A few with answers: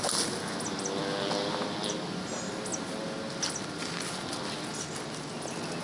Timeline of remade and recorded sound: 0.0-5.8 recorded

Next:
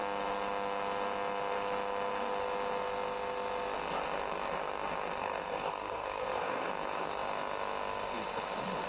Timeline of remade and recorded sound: 0.0-5.2 recorded; 5.2-6.7 remade; 6.7-8.9 recorded